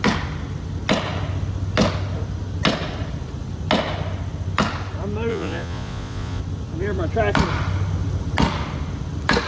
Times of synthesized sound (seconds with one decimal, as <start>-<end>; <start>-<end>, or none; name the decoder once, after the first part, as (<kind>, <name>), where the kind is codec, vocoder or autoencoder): 5.3-6.4 (vocoder, Vocos)